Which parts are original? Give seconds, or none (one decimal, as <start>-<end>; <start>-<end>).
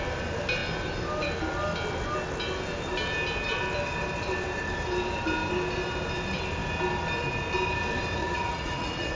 0.0-8.2